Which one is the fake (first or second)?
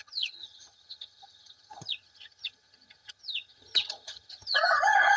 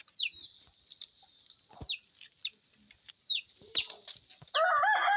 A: first